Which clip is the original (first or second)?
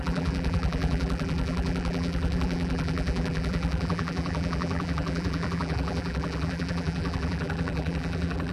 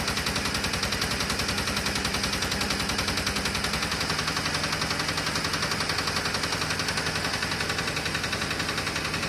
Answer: second